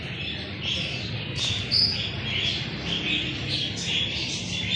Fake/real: real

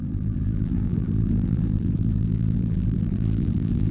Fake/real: fake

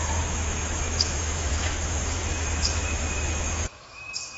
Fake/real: fake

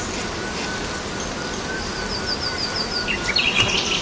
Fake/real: fake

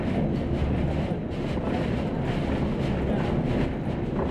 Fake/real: real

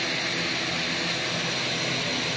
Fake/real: real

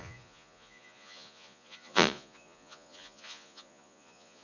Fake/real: fake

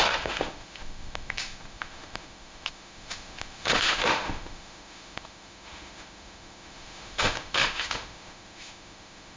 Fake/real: fake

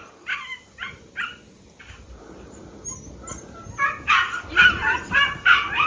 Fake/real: real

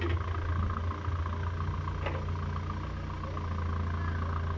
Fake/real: real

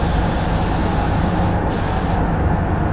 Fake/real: real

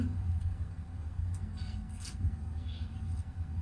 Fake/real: fake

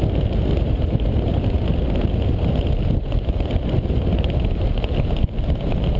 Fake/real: real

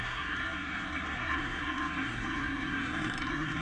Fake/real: fake